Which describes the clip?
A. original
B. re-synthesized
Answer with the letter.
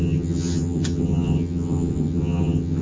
B